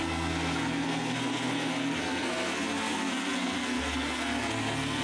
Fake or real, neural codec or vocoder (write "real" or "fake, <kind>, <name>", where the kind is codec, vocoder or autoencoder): fake, codec, SNAC